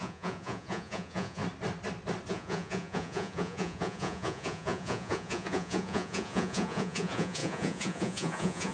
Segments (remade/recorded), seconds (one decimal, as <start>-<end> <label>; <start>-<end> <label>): 0.0-1.4 remade; 1.4-2.3 recorded; 2.3-8.7 remade